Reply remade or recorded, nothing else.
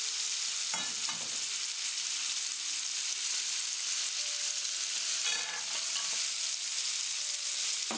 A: recorded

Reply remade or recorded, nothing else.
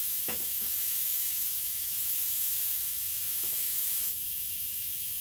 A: remade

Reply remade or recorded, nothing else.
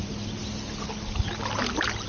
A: recorded